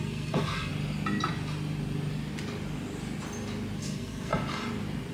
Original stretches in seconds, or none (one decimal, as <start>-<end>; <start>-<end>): 0.7-3.8; 4.3-5.1